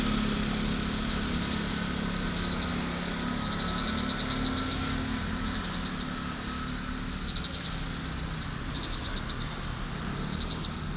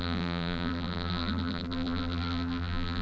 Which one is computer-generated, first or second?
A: second